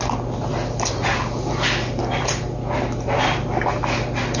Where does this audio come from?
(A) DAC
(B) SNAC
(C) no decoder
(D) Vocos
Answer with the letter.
C